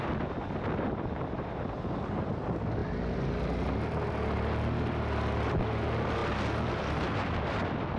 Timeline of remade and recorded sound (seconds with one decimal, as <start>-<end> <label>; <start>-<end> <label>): 0.0-8.0 recorded